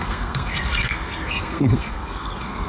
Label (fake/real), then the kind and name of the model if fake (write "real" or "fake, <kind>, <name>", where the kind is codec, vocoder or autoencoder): fake, codec, SNAC